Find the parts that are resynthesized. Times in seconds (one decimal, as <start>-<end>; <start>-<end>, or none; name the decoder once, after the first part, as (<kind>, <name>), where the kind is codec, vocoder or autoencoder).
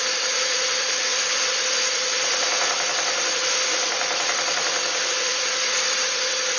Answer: none